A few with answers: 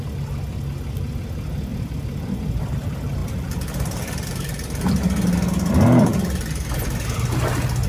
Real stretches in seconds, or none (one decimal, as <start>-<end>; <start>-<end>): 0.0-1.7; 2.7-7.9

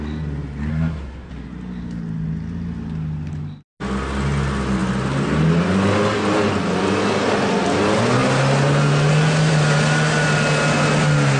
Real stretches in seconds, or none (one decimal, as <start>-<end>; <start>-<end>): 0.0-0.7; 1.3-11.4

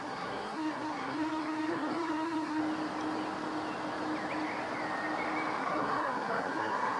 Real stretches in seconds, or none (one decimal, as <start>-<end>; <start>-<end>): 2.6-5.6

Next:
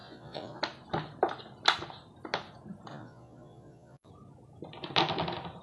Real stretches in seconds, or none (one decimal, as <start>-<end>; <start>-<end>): 0.6-2.9; 4.1-5.6

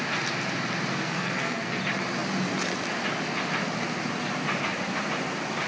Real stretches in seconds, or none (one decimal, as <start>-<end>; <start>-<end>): 0.0-0.9; 1.8-5.7